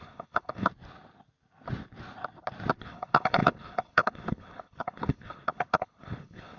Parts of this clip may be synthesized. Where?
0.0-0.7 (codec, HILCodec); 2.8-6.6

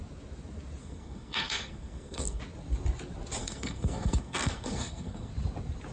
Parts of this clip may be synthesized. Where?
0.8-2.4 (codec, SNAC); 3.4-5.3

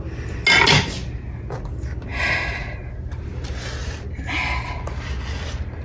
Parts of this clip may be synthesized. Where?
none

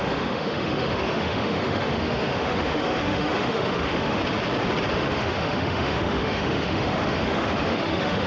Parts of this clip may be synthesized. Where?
0.0-4.2 (autoencoder, DAC-VAE); 4.9-8.3

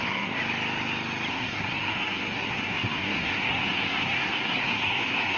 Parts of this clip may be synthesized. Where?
0.0-0.4 (codec, SNAC); 1.3-5.4